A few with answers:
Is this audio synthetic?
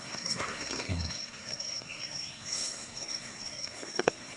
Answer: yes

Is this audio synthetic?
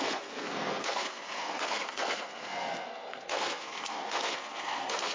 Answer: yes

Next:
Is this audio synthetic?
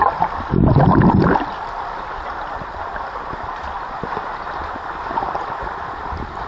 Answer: no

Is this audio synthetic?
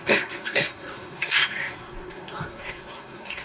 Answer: yes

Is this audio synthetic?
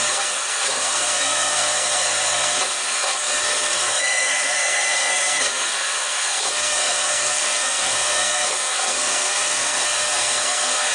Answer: yes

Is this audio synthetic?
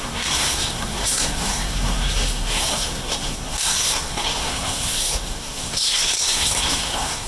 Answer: yes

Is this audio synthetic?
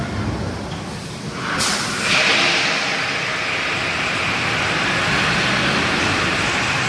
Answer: no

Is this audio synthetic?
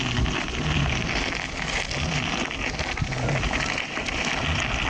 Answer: no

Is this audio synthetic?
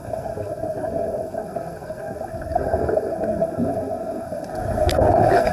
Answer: yes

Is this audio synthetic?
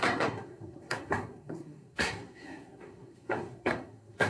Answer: yes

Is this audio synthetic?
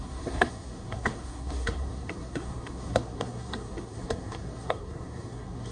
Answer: yes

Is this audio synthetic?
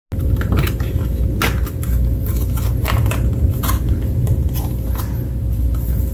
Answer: no